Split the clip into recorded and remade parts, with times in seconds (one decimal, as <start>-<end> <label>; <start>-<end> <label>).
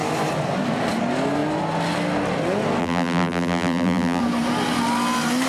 0.0-2.8 recorded; 2.8-4.2 remade; 4.2-5.5 recorded